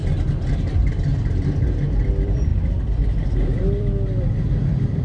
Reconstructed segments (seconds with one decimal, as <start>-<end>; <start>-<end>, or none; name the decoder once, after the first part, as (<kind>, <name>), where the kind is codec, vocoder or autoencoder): 0.5-1.1 (vocoder, BigVGAN v2); 2.1-5.0